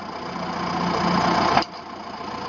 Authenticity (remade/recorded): recorded